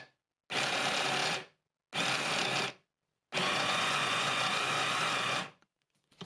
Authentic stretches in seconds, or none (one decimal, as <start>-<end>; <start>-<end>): 0.0-3.4